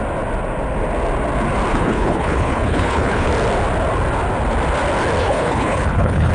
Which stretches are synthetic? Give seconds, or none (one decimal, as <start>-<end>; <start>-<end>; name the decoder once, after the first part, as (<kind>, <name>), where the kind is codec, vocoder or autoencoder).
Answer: 1.7-3.3 (codec, HILCodec); 5.2-6.3